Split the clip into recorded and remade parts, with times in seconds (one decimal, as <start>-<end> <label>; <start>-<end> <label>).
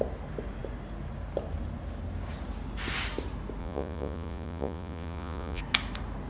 0.0-3.6 recorded; 3.6-5.6 remade; 5.6-6.3 recorded